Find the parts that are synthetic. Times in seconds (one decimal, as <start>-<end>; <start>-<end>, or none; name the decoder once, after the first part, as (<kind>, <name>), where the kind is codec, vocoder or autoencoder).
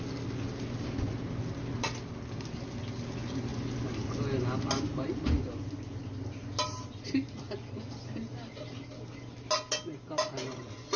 none